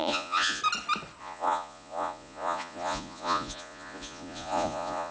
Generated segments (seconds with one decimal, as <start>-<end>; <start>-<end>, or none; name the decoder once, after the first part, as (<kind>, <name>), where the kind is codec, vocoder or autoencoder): 0.0-0.6 (vocoder, Vocos); 1.2-5.1